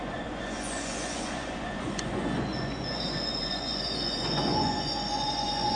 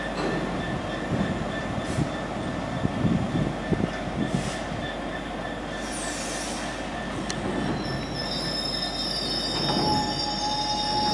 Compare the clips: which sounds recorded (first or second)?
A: second